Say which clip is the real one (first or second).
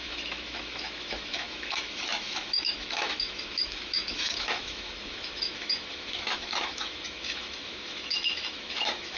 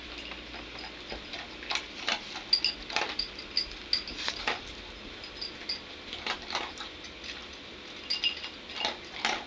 second